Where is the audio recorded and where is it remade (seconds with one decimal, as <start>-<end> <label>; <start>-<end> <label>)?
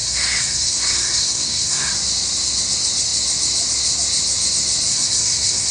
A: 0.0-1.9 remade; 1.9-4.9 recorded; 4.9-5.7 remade